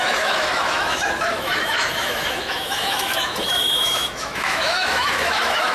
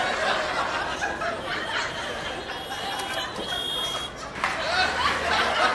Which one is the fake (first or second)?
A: first